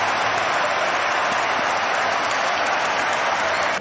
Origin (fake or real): real